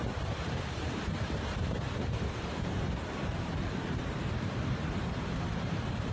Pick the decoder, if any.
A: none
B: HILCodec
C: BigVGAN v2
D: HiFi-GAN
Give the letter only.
C